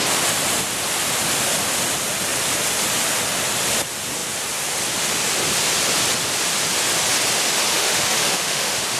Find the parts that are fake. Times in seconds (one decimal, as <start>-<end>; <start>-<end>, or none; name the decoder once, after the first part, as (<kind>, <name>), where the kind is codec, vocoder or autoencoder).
7.7-9.0 (autoencoder, DAC-VAE)